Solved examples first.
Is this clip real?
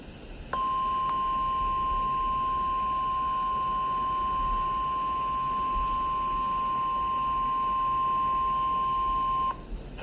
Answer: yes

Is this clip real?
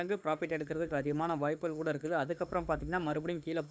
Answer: no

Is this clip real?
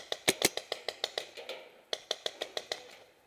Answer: yes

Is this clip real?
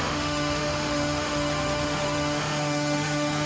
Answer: no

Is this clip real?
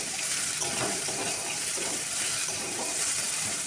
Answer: no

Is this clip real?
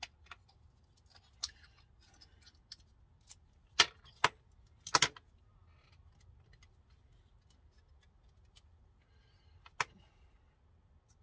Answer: yes